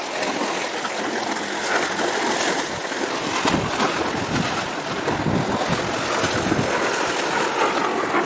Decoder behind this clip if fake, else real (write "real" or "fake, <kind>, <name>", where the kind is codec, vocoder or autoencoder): real